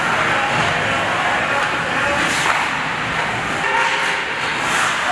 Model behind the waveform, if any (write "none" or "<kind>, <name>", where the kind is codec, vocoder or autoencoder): none